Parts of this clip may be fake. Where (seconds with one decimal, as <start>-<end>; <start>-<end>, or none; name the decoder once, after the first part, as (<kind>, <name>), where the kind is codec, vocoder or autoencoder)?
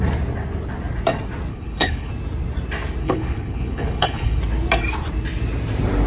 1.5-2.1 (codec, HILCodec); 3.0-4.4